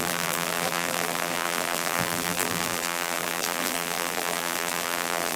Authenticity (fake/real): fake